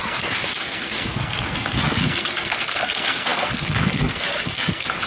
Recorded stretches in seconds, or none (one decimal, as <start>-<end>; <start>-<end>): none